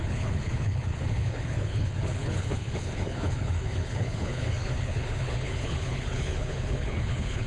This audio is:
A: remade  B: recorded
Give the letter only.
A